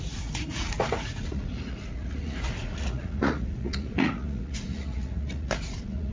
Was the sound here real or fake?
fake